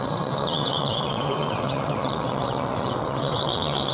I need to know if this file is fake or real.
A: fake